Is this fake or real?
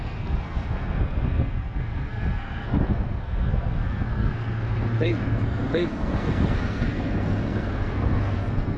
fake